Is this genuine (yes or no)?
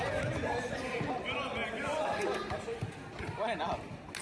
yes